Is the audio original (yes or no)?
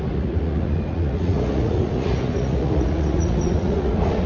no